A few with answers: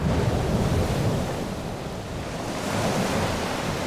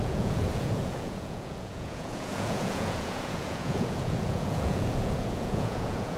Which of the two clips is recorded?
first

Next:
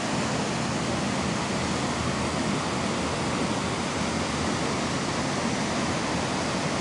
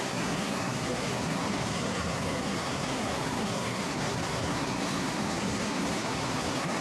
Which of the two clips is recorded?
first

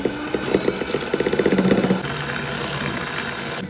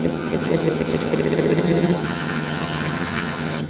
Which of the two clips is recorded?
first